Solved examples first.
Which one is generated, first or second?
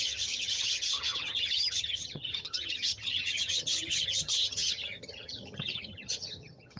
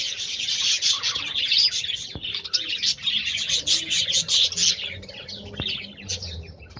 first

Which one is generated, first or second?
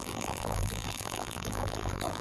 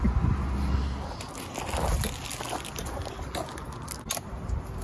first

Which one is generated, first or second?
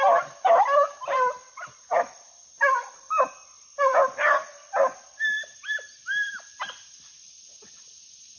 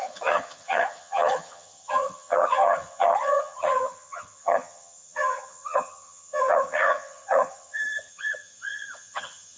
second